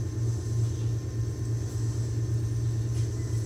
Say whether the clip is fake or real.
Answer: real